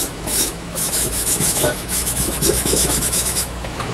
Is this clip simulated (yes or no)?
yes